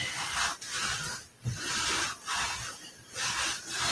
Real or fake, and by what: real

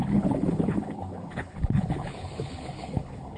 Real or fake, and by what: fake, codec, HILCodec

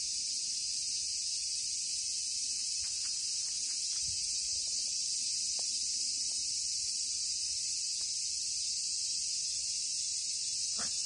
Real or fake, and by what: real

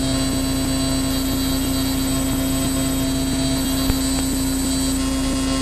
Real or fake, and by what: real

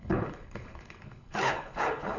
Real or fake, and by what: fake, codec, HILCodec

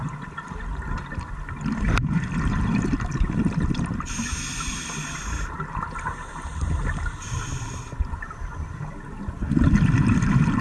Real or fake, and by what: real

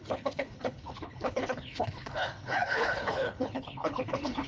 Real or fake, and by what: fake, codec, HILCodec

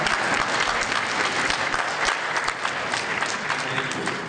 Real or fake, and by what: real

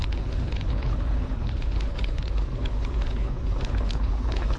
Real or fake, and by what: fake, codec, HILCodec